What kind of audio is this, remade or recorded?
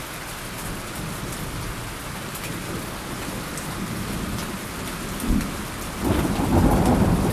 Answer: recorded